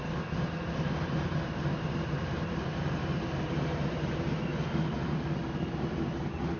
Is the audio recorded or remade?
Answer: recorded